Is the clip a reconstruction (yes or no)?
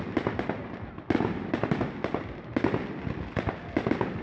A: no